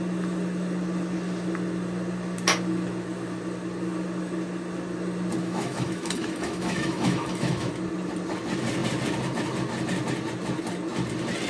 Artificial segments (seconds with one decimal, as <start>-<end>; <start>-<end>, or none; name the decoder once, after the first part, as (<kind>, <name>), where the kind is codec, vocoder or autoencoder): 5.4-7.7 (autoencoder, DAC-VAE)